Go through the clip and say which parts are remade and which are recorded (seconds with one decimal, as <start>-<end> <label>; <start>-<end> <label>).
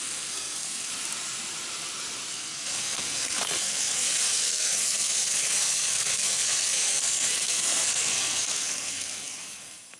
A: 0.0-0.9 remade; 0.9-2.3 recorded; 2.3-10.0 remade